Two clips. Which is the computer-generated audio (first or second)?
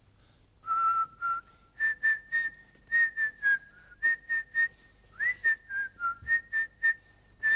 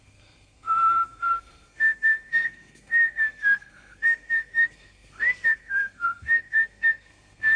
second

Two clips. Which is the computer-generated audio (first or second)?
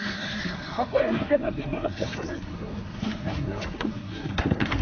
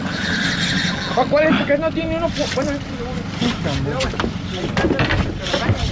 first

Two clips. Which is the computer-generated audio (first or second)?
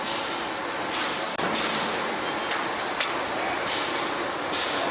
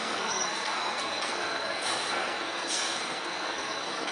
second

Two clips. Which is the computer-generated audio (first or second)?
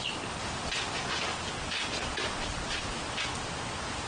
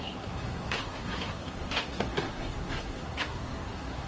second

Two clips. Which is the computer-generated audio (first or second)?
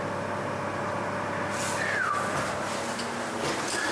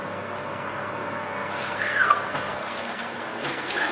second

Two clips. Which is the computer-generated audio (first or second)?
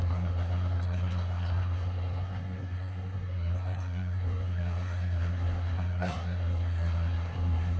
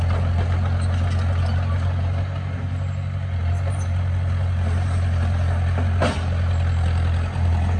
first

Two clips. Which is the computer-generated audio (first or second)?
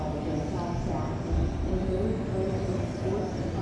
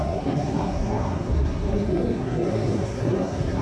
second